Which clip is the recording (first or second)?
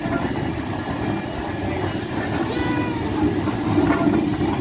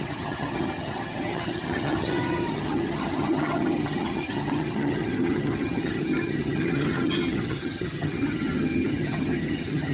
first